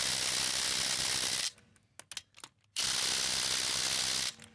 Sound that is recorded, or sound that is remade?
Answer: recorded